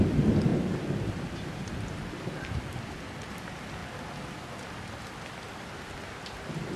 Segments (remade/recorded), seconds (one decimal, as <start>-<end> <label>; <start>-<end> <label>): 0.0-6.8 recorded